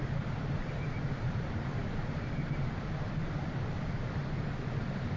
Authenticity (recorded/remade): recorded